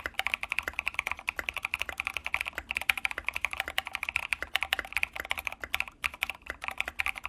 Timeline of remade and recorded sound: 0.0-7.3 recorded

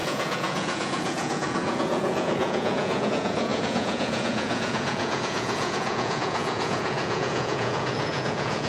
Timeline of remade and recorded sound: 0.0-8.7 remade

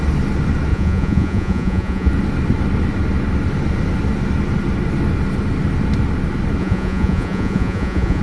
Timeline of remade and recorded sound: 0.0-0.7 recorded; 0.7-2.1 remade; 2.1-6.6 recorded; 6.6-8.2 remade

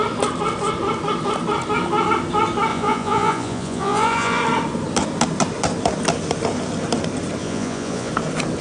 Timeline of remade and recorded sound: 0.0-2.7 recorded; 2.7-4.4 remade; 4.4-7.4 recorded; 7.4-8.1 remade; 8.1-8.6 recorded

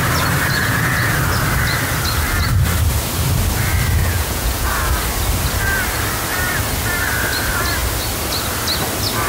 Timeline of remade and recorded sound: 0.0-0.6 recorded; 0.6-1.1 remade; 1.1-4.0 recorded; 4.0-4.7 remade; 4.7-9.3 recorded

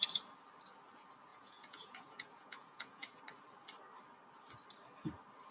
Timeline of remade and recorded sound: 0.0-1.3 recorded; 1.3-3.2 remade; 3.2-5.5 recorded

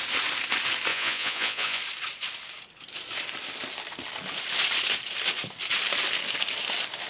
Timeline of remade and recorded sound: 0.0-0.9 recorded; 0.9-1.8 remade; 1.8-7.1 recorded

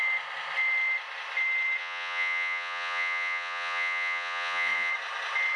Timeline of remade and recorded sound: 0.0-1.8 recorded; 1.8-4.9 remade; 4.9-5.6 recorded